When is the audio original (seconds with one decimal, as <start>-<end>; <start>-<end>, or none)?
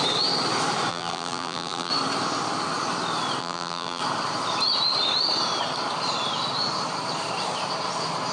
0.0-0.9; 1.9-3.4; 4.0-8.3